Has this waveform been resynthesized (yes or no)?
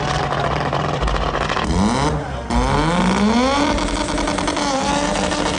no